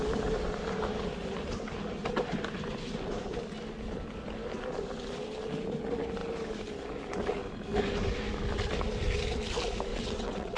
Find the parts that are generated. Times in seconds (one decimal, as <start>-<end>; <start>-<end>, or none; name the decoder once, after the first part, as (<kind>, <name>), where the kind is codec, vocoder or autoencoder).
9.9-10.6 (vocoder, WaveNeXt)